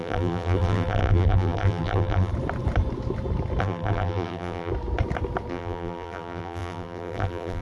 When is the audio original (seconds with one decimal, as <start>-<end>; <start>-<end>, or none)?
2.3-3.6; 4.7-5.5